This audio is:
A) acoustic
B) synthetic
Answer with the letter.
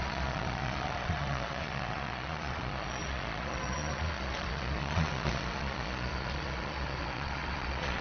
B